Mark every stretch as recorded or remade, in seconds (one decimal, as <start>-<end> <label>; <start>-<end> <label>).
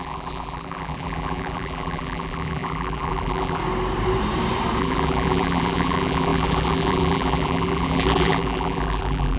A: 0.0-3.6 remade; 3.6-4.8 recorded; 4.8-9.4 remade